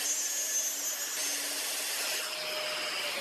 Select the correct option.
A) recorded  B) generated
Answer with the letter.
A